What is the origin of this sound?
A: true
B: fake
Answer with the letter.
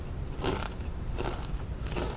A